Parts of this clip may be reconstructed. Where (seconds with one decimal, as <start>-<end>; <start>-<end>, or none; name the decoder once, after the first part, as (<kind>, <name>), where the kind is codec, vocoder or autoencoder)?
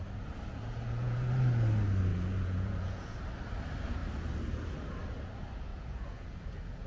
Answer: 0.5-1.3 (vocoder, Vocos); 2.1-3.2; 5.7-6.9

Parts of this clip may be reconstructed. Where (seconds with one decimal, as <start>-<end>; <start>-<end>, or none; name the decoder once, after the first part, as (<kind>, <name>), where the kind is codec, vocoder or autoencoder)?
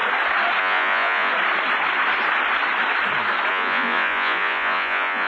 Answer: 0.6-1.3 (vocoder, Vocos); 3.5-5.3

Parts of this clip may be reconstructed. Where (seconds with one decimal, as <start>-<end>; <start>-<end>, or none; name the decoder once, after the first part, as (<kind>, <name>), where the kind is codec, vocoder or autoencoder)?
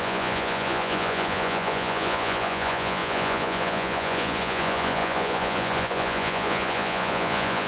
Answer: 0.0-7.7 (vocoder, Vocos)